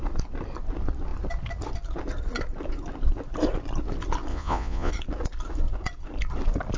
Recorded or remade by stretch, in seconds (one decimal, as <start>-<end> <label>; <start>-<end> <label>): 0.0-4.3 recorded; 4.3-4.9 remade; 4.9-6.8 recorded